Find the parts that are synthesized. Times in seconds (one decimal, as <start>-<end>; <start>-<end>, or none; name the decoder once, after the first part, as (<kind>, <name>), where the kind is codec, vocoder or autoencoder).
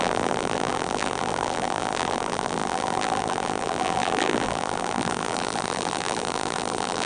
0.0-7.1 (vocoder, BigVGAN v2)